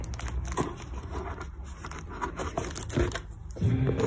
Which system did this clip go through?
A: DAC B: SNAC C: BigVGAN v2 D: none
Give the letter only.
D